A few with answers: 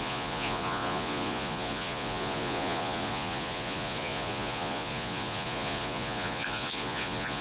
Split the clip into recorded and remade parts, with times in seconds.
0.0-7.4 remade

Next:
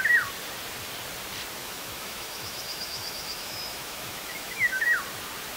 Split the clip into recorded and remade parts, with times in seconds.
0.0-1.6 recorded; 1.6-5.0 remade; 5.0-5.6 recorded

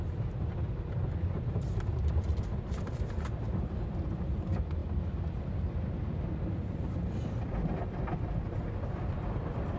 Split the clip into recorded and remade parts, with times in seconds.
0.0-4.8 remade; 4.8-8.9 recorded; 8.9-9.8 remade

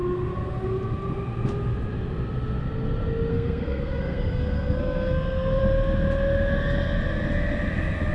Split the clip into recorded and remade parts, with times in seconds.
0.0-3.3 recorded; 3.3-5.6 remade; 5.6-8.1 recorded